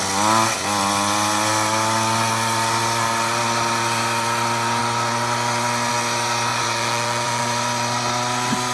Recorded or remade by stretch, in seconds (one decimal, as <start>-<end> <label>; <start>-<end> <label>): 0.0-6.5 recorded; 6.5-7.4 remade; 7.4-8.7 recorded